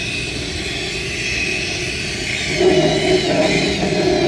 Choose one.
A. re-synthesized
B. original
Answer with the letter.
B